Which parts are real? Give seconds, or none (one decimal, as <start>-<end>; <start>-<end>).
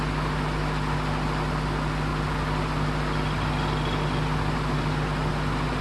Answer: 0.0-5.8